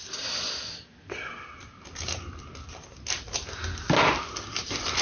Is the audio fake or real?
real